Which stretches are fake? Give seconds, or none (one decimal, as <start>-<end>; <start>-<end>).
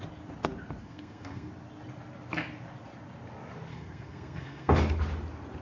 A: 0.8-1.5; 3.7-4.7